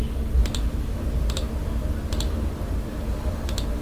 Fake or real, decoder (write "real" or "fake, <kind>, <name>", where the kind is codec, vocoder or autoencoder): real